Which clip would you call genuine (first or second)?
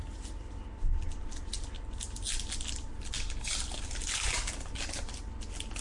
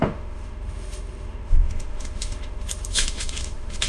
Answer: first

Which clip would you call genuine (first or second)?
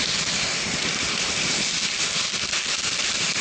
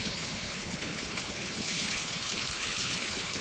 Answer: first